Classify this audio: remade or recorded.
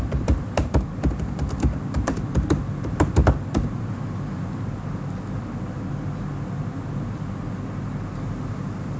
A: recorded